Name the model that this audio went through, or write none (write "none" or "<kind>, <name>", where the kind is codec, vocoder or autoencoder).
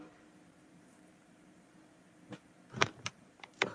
vocoder, BigVGAN v2